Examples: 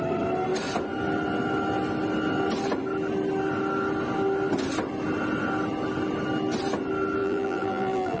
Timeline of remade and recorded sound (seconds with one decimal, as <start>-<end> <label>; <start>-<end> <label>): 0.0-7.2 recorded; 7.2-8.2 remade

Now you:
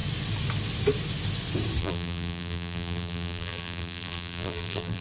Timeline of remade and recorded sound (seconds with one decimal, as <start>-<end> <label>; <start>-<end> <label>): 0.0-1.8 recorded; 1.8-5.0 remade

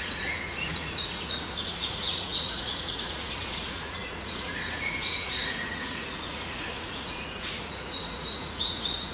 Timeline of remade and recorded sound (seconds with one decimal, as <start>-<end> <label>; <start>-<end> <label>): 0.0-9.1 remade

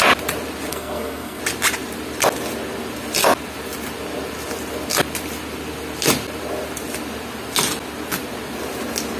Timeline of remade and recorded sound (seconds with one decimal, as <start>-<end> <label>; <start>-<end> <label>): 0.0-0.7 recorded; 0.7-1.4 remade; 1.4-9.2 recorded

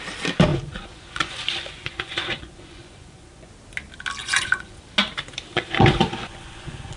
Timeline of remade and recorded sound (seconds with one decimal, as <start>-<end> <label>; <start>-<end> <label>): 0.0-0.5 recorded; 0.5-3.5 remade; 3.5-4.2 recorded; 4.2-4.8 remade; 4.8-5.5 recorded; 5.5-7.0 remade

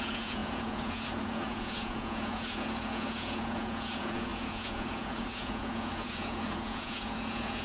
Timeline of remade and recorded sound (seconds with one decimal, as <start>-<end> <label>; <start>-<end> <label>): 0.0-7.6 remade